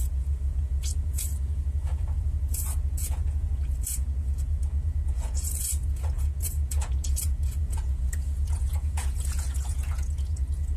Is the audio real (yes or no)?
no